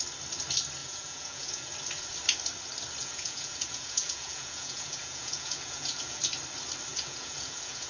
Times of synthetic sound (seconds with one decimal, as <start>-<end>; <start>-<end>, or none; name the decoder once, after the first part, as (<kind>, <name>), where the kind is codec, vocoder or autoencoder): 0.8-1.7 (vocoder, Vocos); 3.0-6.2; 6.9-7.9